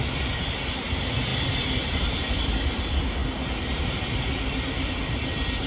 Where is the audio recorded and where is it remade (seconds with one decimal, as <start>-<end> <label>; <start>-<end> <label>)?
0.0-1.3 recorded; 1.3-2.4 remade; 2.4-3.2 recorded; 3.2-4.9 remade; 4.9-5.7 recorded